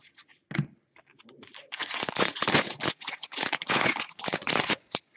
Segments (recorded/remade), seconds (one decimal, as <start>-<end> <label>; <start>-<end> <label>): 0.0-1.8 recorded; 1.8-5.2 remade